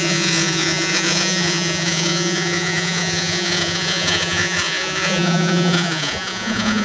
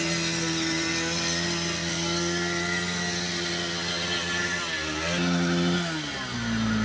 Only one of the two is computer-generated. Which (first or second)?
first